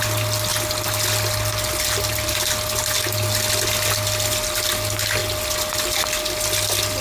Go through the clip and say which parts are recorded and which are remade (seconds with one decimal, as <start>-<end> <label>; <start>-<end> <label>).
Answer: 0.0-7.0 recorded